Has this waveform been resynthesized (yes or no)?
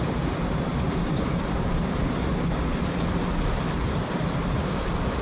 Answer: no